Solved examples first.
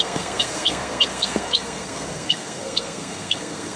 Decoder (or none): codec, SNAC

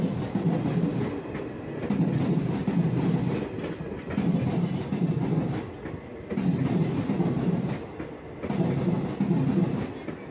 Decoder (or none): none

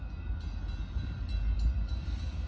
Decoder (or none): none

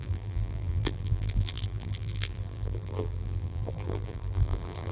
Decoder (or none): vocoder, BigVGAN v2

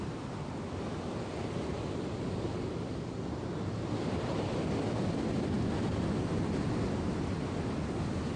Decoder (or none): none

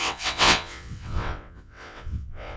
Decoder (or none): vocoder, WaveNeXt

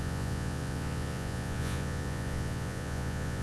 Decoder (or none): vocoder, Vocos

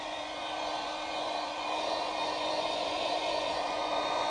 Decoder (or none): vocoder, Vocos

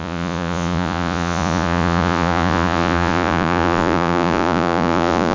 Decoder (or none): vocoder, Vocos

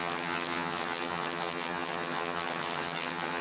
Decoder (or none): vocoder, HiFi-GAN